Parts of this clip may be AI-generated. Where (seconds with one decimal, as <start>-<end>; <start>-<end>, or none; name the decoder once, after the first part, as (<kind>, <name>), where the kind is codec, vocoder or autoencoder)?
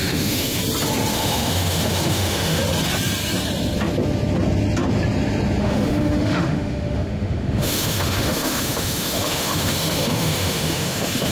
0.0-0.6 (autoencoder, DAC-VAE); 1.1-2.6; 5.6-11.3